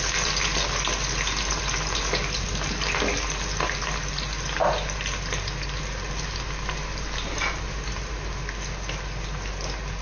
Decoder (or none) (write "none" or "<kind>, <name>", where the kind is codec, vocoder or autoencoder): none